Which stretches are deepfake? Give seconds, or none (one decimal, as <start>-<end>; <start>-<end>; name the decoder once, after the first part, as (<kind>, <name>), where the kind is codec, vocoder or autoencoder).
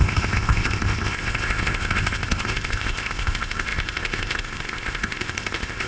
0.0-5.9 (codec, ZipCodec)